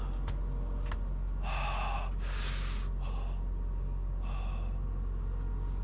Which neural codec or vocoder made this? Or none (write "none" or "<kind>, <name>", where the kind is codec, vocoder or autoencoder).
none